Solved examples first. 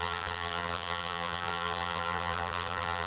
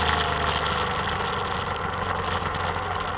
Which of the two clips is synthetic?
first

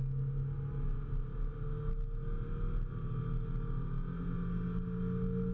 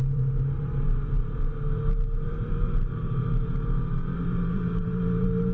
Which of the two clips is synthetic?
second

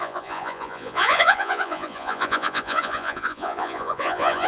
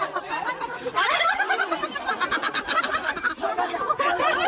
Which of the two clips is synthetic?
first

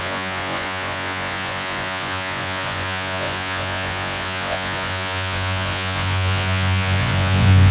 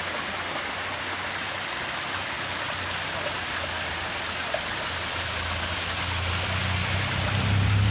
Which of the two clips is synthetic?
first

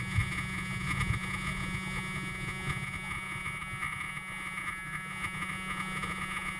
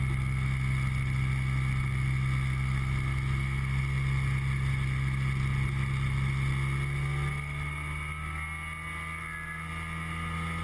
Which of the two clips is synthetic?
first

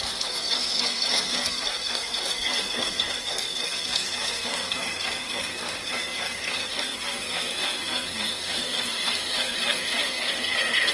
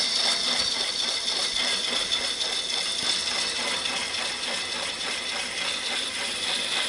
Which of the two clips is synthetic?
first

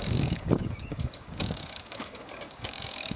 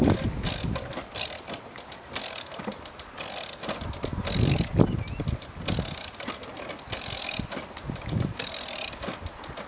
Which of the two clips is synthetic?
first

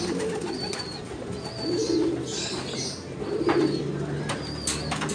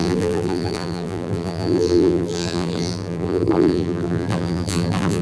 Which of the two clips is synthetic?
second